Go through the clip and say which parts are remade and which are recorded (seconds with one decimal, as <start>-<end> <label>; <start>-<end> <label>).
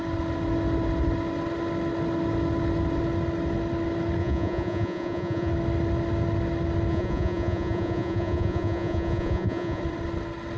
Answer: 0.0-4.2 recorded; 4.2-5.5 remade; 5.5-6.9 recorded; 6.9-9.8 remade; 9.8-10.6 recorded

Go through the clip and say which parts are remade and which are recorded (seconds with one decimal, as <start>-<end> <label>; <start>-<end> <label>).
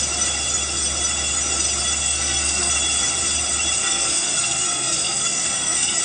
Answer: 0.0-2.0 recorded; 2.0-2.7 remade; 2.7-3.8 recorded; 3.8-6.0 remade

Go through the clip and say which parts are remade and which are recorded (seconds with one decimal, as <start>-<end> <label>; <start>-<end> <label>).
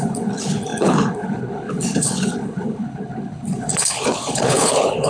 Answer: 0.0-5.1 remade